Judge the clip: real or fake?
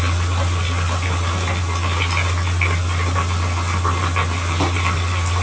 real